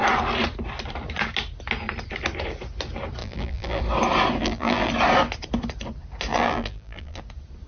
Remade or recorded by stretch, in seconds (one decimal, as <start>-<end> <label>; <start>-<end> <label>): 0.0-3.2 recorded; 3.2-3.8 remade; 3.8-4.4 recorded; 4.4-4.9 remade; 4.9-6.3 recorded; 6.3-7.2 remade; 7.2-7.7 recorded